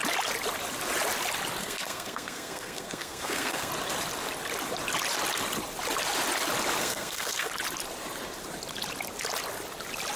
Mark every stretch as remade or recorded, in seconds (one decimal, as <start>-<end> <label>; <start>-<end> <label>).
0.0-1.6 recorded; 1.6-3.7 remade; 3.7-6.8 recorded; 6.8-7.5 remade; 7.5-10.2 recorded